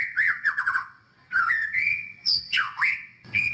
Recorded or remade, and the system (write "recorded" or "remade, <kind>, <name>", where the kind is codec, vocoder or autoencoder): remade, vocoder, WaveNeXt